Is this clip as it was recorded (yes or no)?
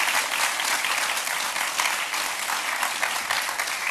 yes